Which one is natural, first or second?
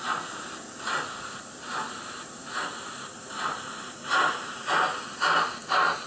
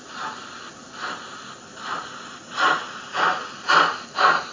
first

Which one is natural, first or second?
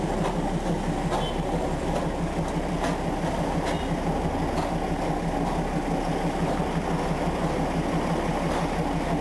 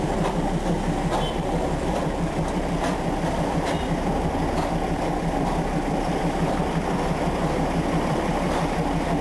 first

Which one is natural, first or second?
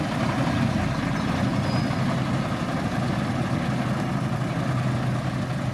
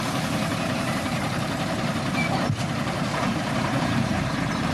first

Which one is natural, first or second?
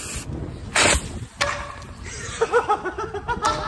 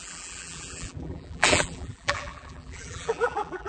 first